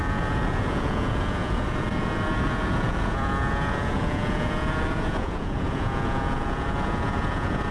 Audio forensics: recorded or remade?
remade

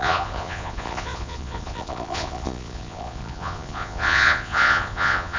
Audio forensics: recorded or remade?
remade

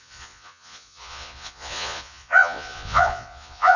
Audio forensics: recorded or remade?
remade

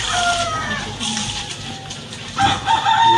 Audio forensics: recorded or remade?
recorded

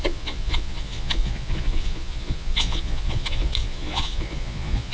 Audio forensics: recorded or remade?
remade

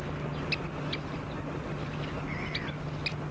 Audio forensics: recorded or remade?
recorded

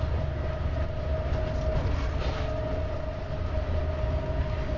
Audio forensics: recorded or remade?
recorded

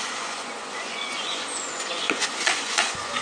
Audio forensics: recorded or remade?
remade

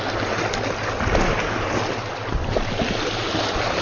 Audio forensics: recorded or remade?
recorded